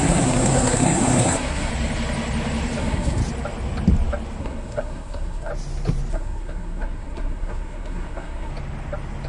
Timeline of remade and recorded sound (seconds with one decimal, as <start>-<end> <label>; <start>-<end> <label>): 0.0-1.7 remade; 1.7-2.8 recorded; 2.8-3.2 remade; 3.2-4.4 recorded; 4.4-5.5 remade; 5.5-6.1 recorded; 6.1-8.5 remade; 8.5-9.3 recorded